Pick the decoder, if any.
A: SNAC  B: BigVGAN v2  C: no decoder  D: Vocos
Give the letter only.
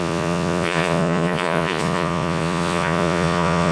D